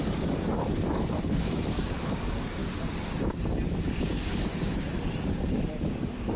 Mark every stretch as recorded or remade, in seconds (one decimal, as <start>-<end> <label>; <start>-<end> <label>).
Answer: 0.0-2.6 remade; 2.6-3.9 recorded; 3.9-4.5 remade; 4.5-5.3 recorded; 5.3-6.4 remade